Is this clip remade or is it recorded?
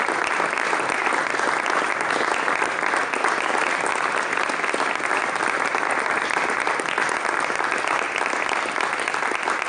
recorded